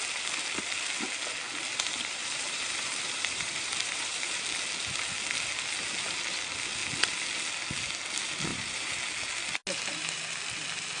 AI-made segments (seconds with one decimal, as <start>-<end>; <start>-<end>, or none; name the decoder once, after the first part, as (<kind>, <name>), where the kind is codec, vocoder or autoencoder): 1.7-4.4 (vocoder, BigVGAN v2); 8.5-9.0